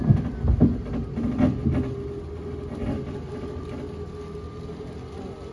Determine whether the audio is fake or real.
real